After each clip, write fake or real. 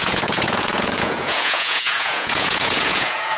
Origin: fake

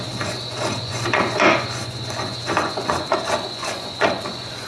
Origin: fake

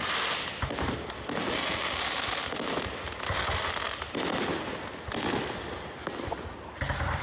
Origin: real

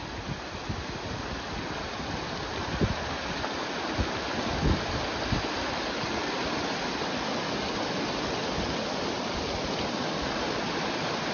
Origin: real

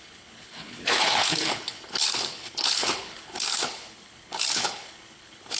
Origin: fake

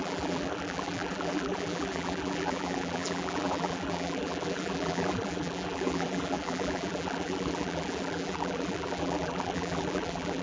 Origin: fake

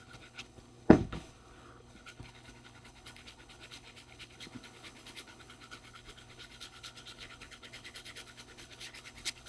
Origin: fake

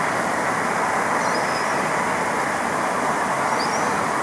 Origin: real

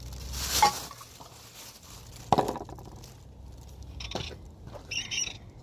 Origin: real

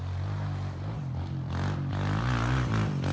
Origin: real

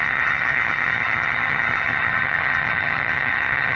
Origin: fake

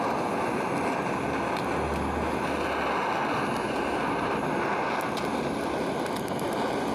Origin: real